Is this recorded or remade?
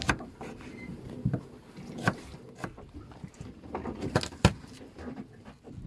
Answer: recorded